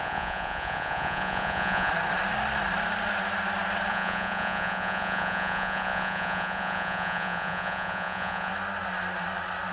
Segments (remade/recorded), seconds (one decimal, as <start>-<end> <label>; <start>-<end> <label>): 0.0-1.9 remade; 1.9-3.9 recorded; 3.9-8.5 remade; 8.5-9.7 recorded